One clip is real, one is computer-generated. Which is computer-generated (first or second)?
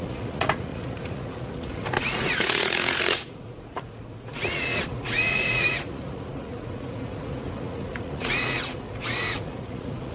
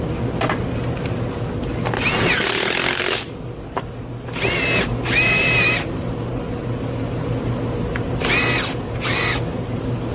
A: first